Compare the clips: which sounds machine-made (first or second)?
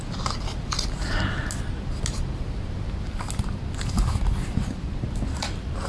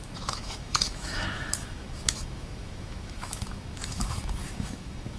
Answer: second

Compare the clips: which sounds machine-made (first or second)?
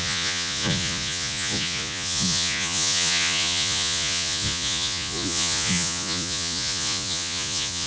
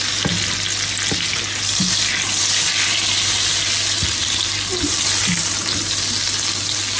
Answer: first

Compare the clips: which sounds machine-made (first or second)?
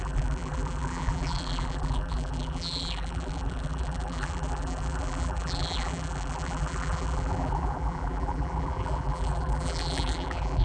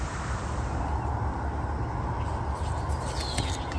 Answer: first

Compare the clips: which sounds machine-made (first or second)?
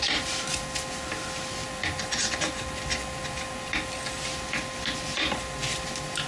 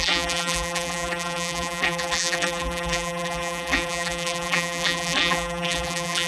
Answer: second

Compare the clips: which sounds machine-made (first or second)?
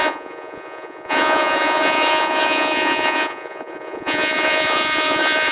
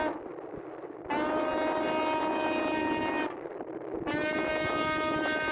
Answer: first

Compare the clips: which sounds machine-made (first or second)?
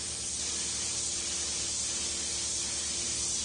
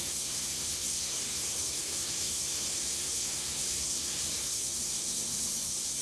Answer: second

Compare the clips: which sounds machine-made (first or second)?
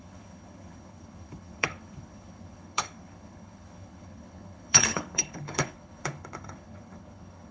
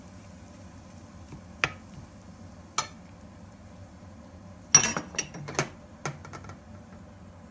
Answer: first